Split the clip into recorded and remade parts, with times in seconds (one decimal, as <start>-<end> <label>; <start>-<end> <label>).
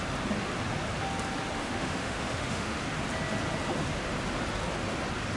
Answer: 0.0-1.6 recorded; 1.6-2.8 remade; 2.8-5.4 recorded